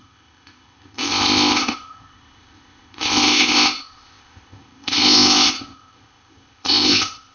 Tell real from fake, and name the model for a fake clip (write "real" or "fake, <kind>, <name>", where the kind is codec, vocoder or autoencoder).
fake, codec, ZipCodec